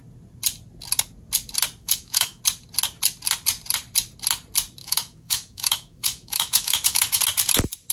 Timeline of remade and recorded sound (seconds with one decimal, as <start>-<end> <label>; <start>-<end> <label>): 0.0-1.8 recorded; 1.8-2.4 remade; 2.4-4.8 recorded; 4.8-7.2 remade; 7.2-7.9 recorded